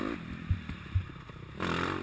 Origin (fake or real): real